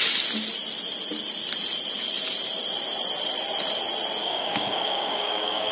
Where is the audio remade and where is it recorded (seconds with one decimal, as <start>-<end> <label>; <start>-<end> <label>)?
0.0-4.2 recorded; 4.2-5.7 remade